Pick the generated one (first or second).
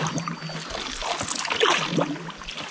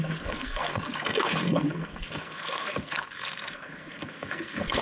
second